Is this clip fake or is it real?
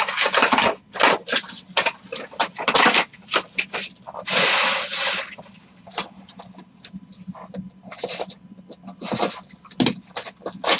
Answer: real